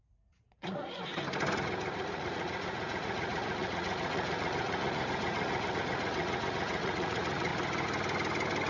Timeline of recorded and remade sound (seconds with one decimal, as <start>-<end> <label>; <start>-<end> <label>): 0.0-1.1 remade; 1.1-2.0 recorded; 2.0-7.5 remade; 7.5-8.7 recorded